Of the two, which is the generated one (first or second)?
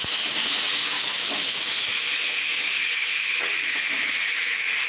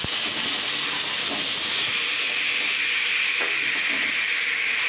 first